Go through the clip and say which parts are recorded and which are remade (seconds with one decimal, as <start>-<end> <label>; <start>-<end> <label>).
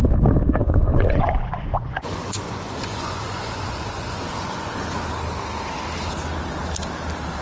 0.0-0.6 recorded; 0.6-5.0 remade; 5.0-7.4 recorded